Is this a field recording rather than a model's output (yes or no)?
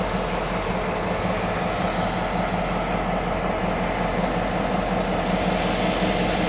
yes